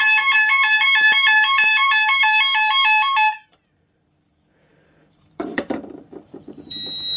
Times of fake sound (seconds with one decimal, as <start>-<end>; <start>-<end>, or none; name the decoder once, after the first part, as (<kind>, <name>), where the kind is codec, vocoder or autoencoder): 0.0-7.2 (vocoder, BigVGAN v2)